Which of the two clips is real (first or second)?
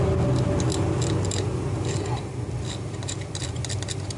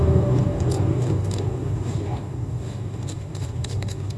first